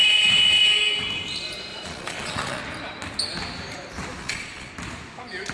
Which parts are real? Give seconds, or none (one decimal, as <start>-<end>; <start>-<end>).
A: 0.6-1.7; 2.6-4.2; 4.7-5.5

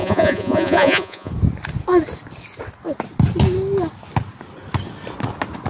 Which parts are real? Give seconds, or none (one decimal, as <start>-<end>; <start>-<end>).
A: 1.3-5.7

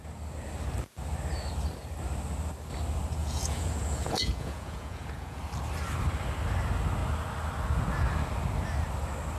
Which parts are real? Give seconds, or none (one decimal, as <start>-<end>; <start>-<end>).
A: 0.0-3.2; 5.4-9.4

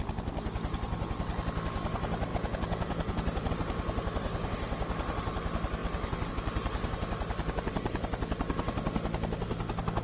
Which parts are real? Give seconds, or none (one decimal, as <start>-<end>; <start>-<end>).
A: 0.0-2.3; 3.5-10.0

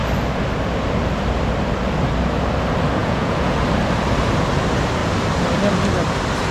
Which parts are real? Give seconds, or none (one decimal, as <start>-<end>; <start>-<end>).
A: 0.0-3.0; 3.6-6.5